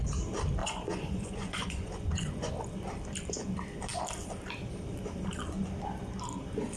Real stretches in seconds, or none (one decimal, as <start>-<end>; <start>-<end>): 0.0-0.6; 2.5-6.8